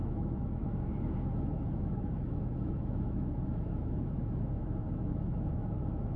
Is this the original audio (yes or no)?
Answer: no